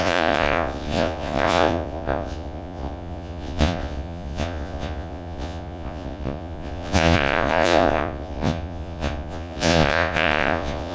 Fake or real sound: fake